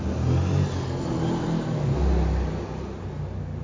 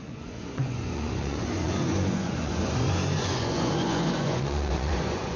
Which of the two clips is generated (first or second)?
second